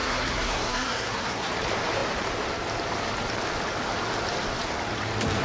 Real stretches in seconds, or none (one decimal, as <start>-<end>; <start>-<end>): 1.5-5.4